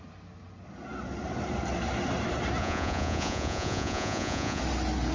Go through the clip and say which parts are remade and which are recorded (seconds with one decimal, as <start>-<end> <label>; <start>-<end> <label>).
0.0-2.6 recorded; 2.6-4.6 remade; 4.6-5.1 recorded